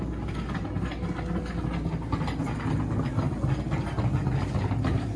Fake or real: real